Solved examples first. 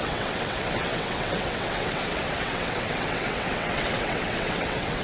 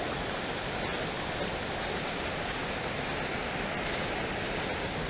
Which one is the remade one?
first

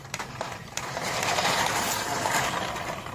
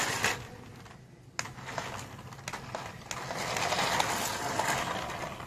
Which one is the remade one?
first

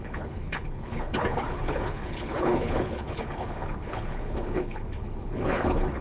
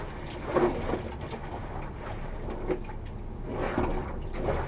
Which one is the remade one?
first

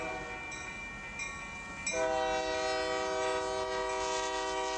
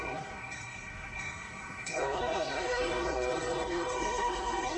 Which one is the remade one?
second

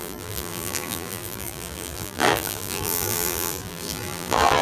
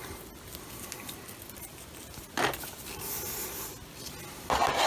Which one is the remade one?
first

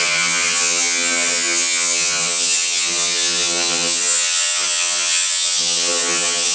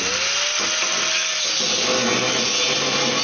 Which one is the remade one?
first